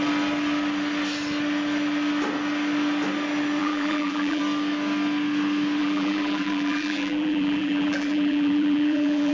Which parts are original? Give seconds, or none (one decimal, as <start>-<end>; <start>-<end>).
0.0-3.6; 4.4-5.8